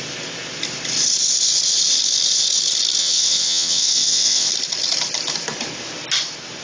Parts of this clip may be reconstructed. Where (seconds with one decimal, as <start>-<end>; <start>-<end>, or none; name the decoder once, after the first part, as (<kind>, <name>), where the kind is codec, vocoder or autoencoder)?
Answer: 3.0-4.5 (vocoder, WaveNeXt)